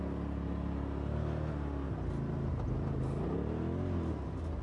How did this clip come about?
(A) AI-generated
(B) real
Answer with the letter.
B